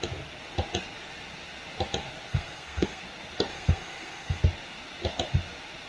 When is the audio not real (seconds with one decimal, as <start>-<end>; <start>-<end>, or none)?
2.3-3.0; 3.5-4.4